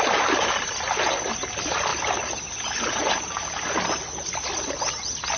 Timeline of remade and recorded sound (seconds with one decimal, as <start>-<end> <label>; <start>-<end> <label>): 0.0-5.4 recorded